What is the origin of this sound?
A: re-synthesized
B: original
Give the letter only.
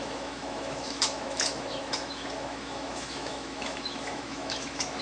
A